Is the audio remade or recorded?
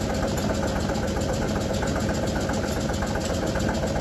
recorded